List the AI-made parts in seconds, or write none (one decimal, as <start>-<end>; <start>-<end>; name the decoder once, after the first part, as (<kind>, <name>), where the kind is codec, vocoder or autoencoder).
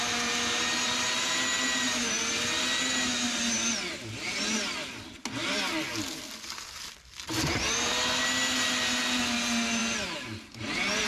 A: none